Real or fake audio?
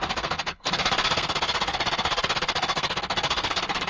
fake